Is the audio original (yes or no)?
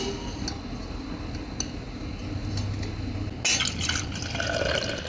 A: yes